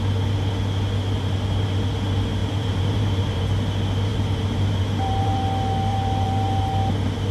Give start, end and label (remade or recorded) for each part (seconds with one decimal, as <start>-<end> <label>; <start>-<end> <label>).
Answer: 0.0-2.4 recorded; 2.4-3.4 remade; 3.4-4.1 recorded; 4.1-5.4 remade; 5.4-5.9 recorded; 5.9-6.6 remade; 6.6-7.3 recorded